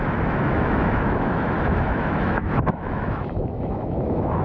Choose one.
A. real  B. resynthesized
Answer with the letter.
B